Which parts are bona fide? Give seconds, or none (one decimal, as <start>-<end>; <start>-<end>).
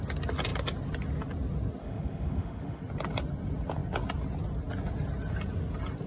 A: 0.0-1.8; 2.8-6.1